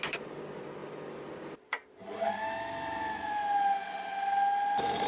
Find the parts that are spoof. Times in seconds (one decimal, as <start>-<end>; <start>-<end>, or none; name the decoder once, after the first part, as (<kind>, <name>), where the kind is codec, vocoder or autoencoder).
none